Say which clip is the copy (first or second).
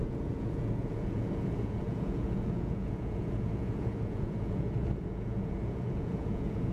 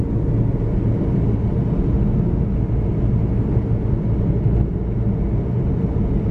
first